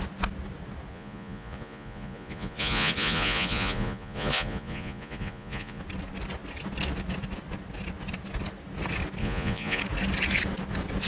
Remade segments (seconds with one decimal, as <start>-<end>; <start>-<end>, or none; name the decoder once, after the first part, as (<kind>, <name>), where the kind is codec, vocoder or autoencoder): 0.9-5.8 (vocoder, Vocos); 9.2-9.8